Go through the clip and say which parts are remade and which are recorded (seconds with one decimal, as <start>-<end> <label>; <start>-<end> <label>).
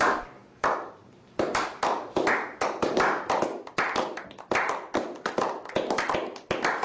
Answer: 0.0-6.8 remade